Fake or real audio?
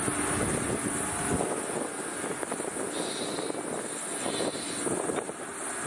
real